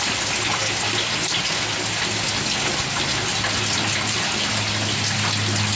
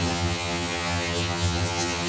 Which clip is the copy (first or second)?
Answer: second